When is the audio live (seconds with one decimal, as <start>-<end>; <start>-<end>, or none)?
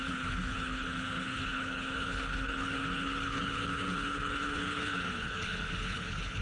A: none